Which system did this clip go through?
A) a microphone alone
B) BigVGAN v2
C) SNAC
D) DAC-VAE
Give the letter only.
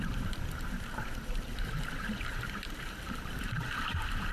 B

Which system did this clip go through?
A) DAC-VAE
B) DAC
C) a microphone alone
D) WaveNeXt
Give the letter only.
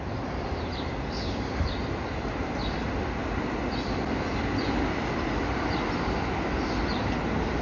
C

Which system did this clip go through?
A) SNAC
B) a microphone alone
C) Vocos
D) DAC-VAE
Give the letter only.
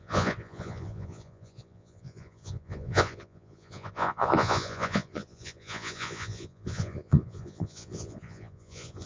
C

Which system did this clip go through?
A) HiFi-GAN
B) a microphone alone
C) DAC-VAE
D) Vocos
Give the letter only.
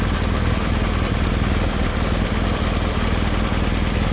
B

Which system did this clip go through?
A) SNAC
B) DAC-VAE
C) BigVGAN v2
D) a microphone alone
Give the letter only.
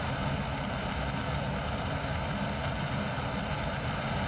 D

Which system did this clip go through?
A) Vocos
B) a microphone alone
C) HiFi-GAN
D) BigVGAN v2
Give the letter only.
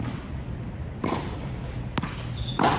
B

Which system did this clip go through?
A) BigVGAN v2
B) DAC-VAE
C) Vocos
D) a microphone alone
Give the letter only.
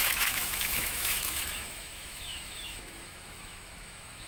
B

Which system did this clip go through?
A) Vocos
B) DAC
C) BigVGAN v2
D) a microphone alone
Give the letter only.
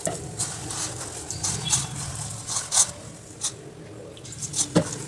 D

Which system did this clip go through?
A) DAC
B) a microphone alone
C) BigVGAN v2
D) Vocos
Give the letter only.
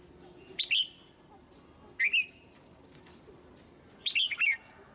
B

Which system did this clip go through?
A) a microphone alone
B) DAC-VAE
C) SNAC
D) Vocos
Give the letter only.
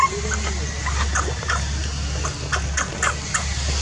A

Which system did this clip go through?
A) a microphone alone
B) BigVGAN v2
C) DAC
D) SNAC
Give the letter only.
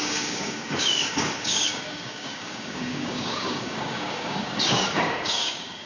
C